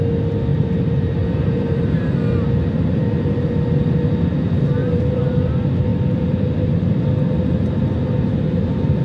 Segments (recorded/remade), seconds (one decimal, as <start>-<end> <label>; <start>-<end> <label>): 0.0-0.5 recorded; 0.5-2.1 remade; 2.1-4.8 recorded; 4.8-5.5 remade; 5.5-5.9 recorded; 5.9-7.0 remade; 7.0-9.0 recorded